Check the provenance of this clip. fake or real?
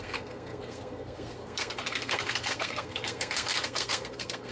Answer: fake